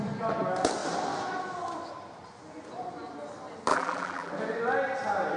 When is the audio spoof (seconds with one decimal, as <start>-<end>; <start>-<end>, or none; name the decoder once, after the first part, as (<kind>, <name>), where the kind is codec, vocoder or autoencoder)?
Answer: 3.7-4.3 (vocoder, BigVGAN v2)